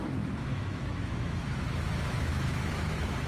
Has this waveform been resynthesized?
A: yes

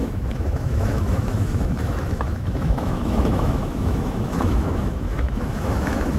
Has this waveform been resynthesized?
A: yes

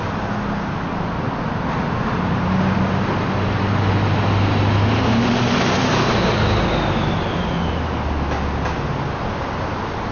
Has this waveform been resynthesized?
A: no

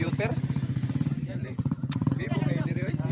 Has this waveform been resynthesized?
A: yes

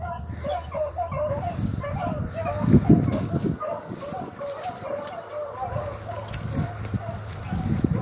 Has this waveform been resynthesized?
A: no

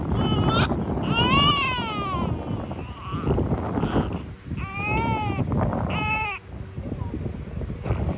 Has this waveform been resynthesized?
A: yes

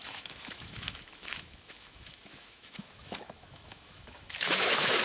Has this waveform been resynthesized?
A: yes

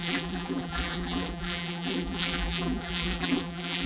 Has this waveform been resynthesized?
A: yes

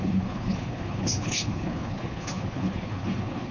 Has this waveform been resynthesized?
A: yes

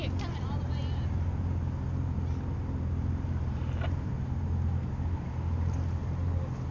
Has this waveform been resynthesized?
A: no